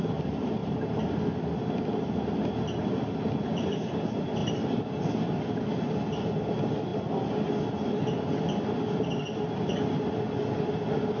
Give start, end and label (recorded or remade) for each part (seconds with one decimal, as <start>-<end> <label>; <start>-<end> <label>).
0.0-11.2 recorded